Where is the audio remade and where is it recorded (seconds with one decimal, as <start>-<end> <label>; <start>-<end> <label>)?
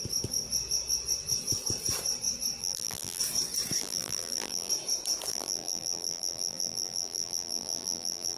0.0-2.6 recorded; 2.6-3.2 remade; 3.2-3.8 recorded; 3.8-4.7 remade; 4.7-5.3 recorded; 5.3-8.4 remade